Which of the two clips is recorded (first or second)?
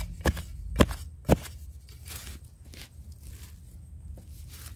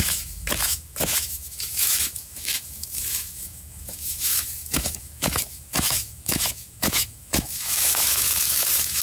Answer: first